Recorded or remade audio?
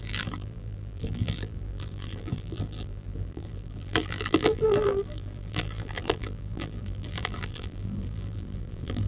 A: remade